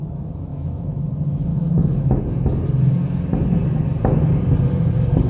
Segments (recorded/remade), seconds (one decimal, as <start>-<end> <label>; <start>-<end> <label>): 0.0-0.5 recorded; 0.5-1.0 remade; 1.0-1.5 recorded; 1.5-2.2 remade; 2.2-5.3 recorded